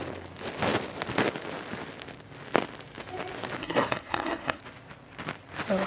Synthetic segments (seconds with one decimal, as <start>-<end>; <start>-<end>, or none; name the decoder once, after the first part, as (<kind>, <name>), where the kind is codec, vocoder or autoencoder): 3.6-4.6 (codec, SNAC)